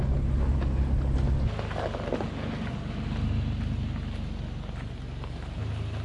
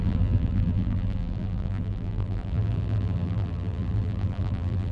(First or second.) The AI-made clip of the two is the second